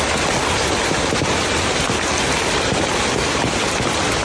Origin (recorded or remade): recorded